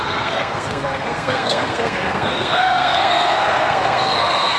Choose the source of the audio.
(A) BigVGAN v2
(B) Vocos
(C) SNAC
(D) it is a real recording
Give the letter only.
C